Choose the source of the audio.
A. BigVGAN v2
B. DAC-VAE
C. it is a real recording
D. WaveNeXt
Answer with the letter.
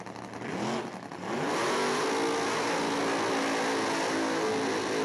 C